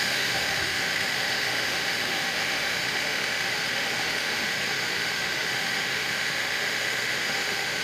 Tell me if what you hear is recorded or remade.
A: remade